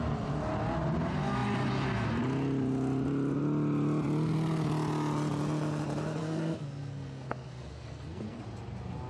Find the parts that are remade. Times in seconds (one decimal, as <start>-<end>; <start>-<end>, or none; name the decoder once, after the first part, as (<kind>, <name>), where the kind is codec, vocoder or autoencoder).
6.2-8.4 (codec, SNAC)

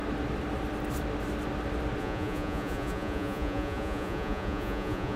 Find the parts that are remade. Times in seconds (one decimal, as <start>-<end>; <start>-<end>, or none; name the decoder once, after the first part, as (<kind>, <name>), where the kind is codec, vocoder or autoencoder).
2.0-5.2 (vocoder, Vocos)

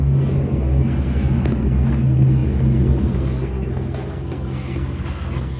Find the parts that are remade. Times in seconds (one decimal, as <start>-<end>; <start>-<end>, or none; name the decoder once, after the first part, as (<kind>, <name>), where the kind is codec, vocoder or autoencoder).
0.0-5.6 (codec, SNAC)

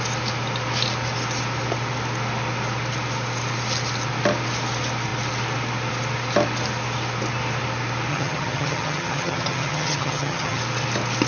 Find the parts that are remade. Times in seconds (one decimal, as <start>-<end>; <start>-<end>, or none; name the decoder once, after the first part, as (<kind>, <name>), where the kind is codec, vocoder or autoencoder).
8.1-10.6 (vocoder, HiFi-GAN)

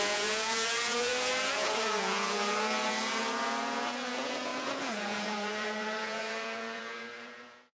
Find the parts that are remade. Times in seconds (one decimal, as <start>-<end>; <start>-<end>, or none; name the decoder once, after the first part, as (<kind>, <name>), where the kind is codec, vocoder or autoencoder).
0.0-7.8 (vocoder, Vocos)